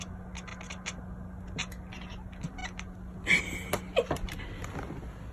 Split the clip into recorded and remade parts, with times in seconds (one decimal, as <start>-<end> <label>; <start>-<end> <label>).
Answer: 0.0-5.3 recorded